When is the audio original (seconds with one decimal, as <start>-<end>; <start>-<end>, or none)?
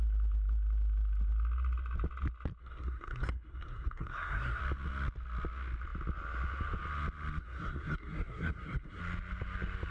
0.0-2.6; 4.6-7.4; 9.0-9.9